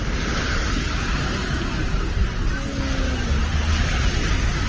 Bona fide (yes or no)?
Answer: yes